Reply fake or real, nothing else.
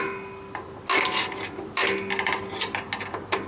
real